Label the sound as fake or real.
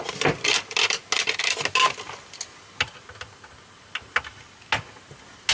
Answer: real